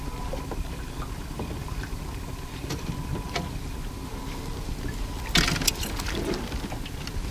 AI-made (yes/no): no